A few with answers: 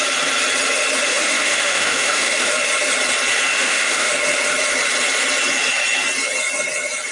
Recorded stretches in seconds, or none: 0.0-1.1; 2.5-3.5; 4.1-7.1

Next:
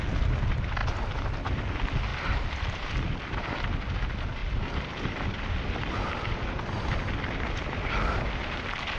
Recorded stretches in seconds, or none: 0.0-0.8; 1.3-2.1; 2.9-4.4; 5.8-9.0

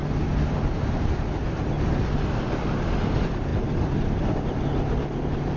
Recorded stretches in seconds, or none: 0.0-5.6

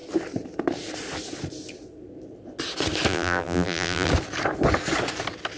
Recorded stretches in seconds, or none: 0.0-3.1; 4.1-5.6

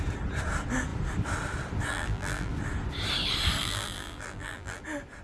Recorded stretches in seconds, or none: 0.0-1.9; 2.5-3.6; 4.8-5.2

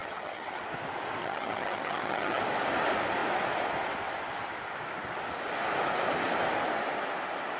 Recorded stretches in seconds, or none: 0.6-1.2; 2.4-7.6

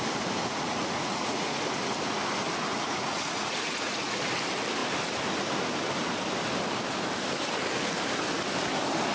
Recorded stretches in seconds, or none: 0.0-0.4; 1.6-2.7; 4.2-9.1

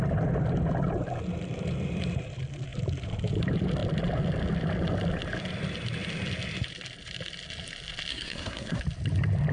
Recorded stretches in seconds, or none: 0.0-8.1; 8.8-9.5